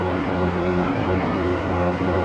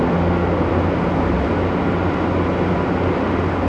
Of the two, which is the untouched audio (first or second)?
second